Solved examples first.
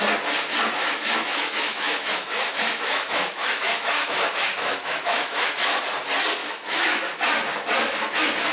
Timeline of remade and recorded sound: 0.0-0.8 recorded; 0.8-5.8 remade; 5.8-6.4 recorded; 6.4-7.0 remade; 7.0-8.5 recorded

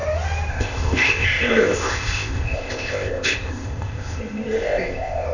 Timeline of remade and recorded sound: 0.0-0.5 recorded; 0.5-5.3 remade